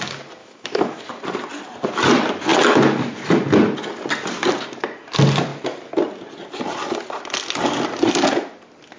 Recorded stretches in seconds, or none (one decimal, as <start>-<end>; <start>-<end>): 0.0-0.4; 1.0-9.0